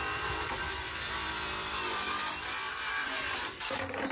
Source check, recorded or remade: remade